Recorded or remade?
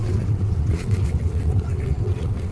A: remade